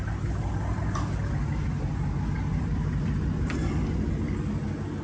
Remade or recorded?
recorded